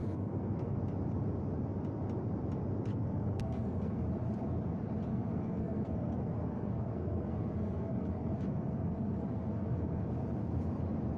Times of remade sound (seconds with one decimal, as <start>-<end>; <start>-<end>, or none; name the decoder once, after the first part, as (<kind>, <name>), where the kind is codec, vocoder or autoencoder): 0.0-0.8 (codec, SNAC); 2.9-4.0; 5.1-10.1